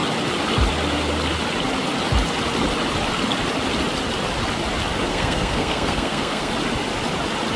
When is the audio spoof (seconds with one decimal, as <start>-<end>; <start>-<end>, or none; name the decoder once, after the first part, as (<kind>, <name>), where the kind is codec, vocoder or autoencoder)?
5.1-6.5 (codec, SNAC)